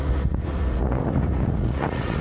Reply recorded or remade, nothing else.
remade